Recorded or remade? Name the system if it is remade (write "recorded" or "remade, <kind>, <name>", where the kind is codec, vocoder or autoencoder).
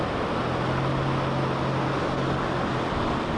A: recorded